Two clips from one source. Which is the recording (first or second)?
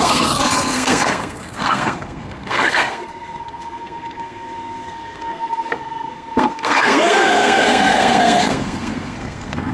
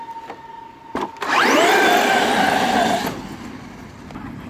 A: second